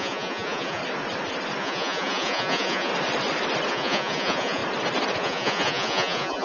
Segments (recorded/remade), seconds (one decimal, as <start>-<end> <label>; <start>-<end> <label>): 0.0-0.8 remade; 0.8-1.6 recorded; 1.6-2.9 remade; 2.9-3.7 recorded; 3.7-4.6 remade; 4.6-5.2 recorded; 5.2-6.4 remade